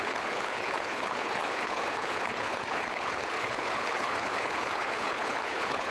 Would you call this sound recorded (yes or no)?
no